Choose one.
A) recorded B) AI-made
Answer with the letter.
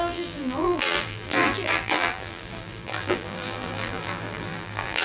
B